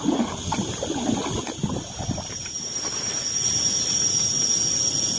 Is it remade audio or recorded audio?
recorded